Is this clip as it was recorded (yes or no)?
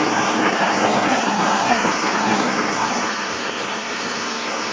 no